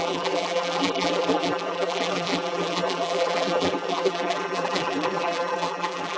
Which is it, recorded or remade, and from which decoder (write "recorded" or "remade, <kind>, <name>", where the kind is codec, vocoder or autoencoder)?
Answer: remade, vocoder, BigVGAN v2